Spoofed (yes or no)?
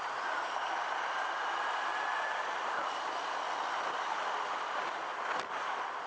no